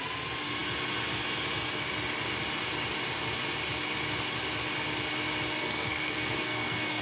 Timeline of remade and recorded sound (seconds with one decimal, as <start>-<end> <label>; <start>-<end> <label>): 0.0-5.6 recorded; 5.6-7.0 remade